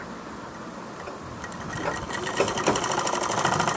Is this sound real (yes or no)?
yes